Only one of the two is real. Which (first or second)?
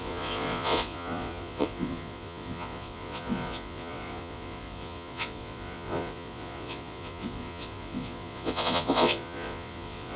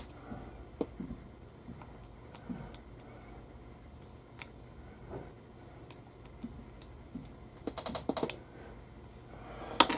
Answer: second